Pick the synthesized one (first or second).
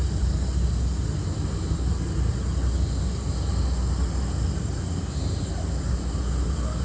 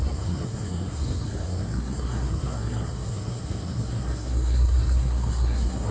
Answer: second